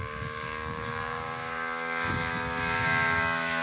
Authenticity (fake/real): fake